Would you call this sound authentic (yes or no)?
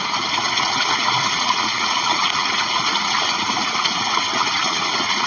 no